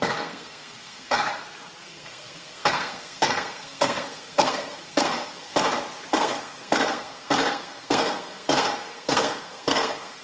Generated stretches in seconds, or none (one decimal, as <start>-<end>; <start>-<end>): 0.0-1.3; 1.8-5.5; 6.1-10.2